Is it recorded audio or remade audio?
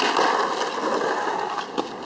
recorded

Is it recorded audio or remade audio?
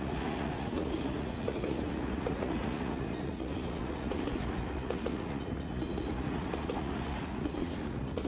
remade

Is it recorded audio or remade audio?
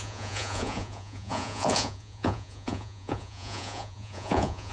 remade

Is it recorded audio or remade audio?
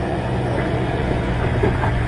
remade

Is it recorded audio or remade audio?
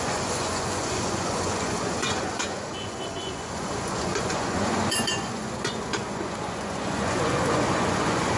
remade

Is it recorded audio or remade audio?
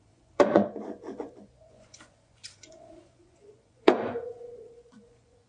remade